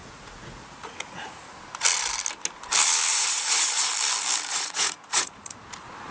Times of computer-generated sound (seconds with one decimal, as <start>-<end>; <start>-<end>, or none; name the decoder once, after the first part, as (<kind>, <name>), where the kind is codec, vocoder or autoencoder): 0.0-1.5 (vocoder, Vocos); 3.1-3.9; 4.5-5.6

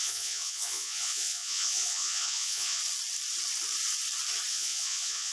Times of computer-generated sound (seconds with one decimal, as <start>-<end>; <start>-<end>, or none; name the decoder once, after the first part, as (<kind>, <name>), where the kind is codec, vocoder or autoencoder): 0.0-2.8 (vocoder, Vocos); 4.5-5.3

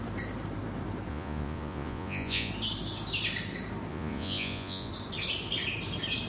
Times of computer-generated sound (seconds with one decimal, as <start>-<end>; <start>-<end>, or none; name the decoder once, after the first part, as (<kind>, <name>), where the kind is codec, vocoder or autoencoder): 1.1-2.5 (vocoder, Vocos); 3.9-4.9

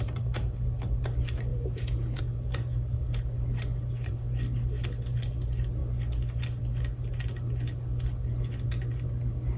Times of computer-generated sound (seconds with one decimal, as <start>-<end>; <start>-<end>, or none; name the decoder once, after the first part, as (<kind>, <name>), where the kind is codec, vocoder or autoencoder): 1.5-2.2 (vocoder, Vocos)

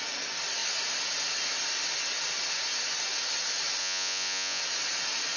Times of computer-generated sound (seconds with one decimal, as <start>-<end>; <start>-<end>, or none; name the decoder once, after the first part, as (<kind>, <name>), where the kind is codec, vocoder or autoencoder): 3.8-4.6 (vocoder, Vocos)

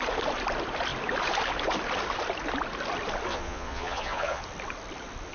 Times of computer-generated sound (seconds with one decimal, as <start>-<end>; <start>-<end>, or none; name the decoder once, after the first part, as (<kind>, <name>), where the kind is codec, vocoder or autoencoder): 3.3-4.4 (vocoder, Vocos)

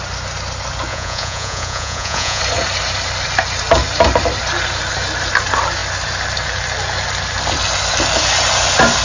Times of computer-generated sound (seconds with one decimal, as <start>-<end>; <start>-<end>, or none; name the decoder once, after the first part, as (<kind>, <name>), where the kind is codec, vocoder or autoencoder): 0.9-2.4 (vocoder, Vocos)

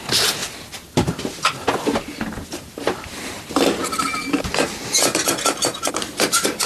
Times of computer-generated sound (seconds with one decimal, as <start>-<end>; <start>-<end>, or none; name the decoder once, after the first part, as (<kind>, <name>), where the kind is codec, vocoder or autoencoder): none